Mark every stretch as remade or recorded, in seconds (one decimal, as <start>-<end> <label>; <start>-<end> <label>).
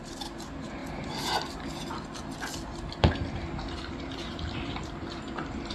0.0-5.7 recorded